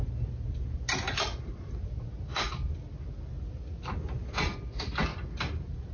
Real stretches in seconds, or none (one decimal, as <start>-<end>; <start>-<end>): 0.0-5.1